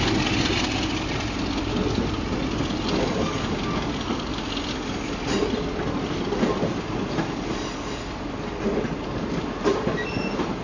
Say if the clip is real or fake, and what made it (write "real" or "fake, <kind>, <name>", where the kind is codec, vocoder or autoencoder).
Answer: real